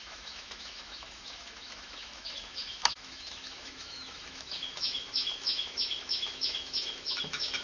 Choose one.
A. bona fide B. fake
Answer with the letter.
B